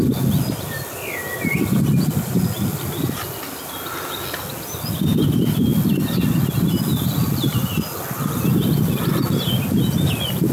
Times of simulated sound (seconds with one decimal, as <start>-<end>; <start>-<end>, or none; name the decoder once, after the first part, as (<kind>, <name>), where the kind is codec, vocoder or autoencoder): none